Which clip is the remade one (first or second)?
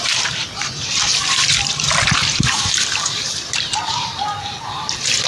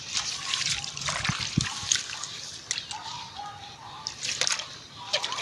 first